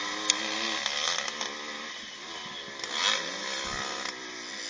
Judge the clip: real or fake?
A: real